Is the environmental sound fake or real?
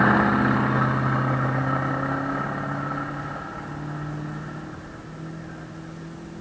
real